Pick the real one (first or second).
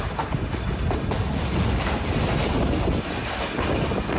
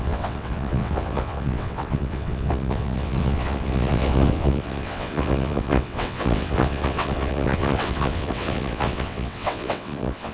first